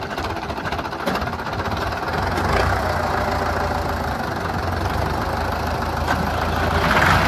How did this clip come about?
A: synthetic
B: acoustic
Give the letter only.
B